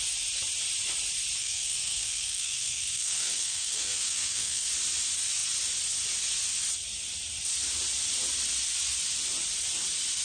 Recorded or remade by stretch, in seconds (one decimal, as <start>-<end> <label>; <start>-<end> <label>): 0.0-1.4 recorded; 1.4-4.7 remade; 4.7-10.2 recorded